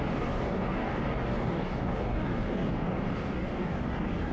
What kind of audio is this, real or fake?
fake